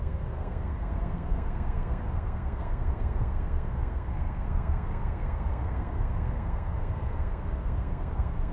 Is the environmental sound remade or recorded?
remade